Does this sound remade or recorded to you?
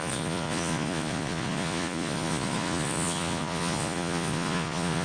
remade